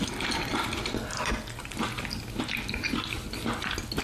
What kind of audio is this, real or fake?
real